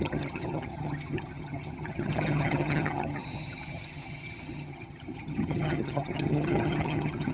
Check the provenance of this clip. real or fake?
fake